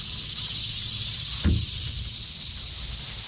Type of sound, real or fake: real